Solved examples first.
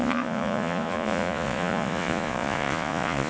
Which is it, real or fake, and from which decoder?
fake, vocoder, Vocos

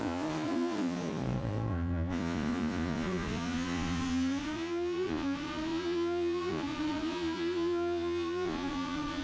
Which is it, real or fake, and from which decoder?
fake, vocoder, Vocos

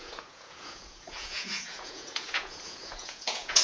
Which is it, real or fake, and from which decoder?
fake, vocoder, Vocos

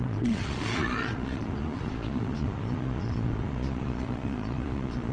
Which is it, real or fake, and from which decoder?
fake, vocoder, Vocos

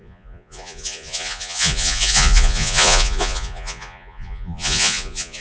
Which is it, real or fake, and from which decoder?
fake, vocoder, Vocos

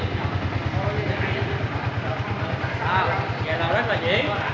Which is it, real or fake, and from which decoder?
real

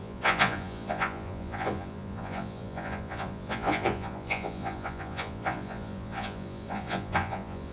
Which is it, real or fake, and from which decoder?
fake, vocoder, Vocos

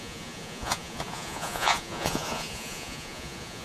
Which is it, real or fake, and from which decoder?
fake, vocoder, Vocos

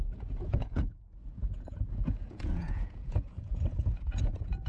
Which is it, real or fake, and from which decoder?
fake, vocoder, Vocos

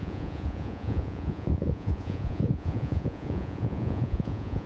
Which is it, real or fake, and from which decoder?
fake, vocoder, Vocos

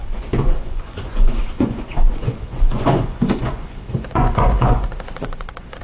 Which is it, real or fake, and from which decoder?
fake, vocoder, Vocos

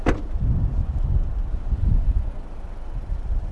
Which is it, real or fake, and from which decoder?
real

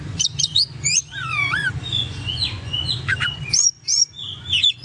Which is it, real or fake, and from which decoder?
fake, vocoder, Vocos